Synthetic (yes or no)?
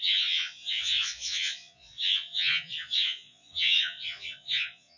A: yes